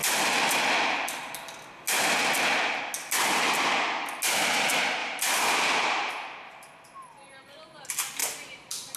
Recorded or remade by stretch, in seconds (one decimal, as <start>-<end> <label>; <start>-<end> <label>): 0.0-5.0 recorded; 5.0-6.1 remade; 6.1-9.0 recorded